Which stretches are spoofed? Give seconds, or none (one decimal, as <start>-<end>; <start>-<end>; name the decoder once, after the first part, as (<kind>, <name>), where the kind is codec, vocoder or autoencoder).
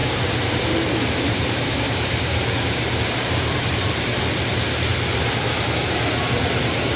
0.0-4.2 (vocoder, BigVGAN v2)